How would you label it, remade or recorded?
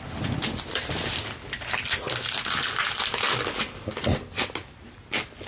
recorded